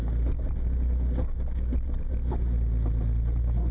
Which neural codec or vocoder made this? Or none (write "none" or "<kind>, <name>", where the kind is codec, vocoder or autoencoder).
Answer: none